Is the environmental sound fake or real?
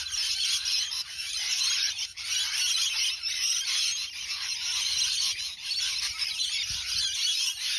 fake